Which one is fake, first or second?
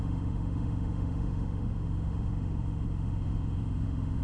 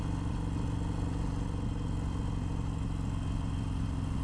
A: first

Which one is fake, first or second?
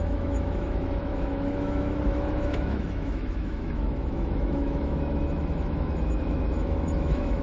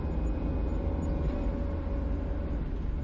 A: first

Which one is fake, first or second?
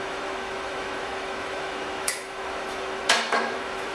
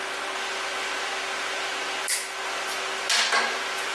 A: first